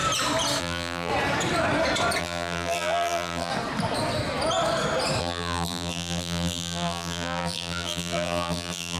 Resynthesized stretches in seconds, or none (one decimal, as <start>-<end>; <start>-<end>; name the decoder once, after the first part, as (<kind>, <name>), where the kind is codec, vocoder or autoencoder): 0.6-1.1 (vocoder, BigVGAN v2); 2.2-3.5; 5.2-9.0